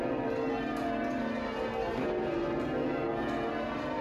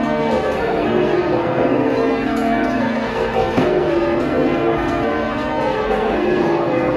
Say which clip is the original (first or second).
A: first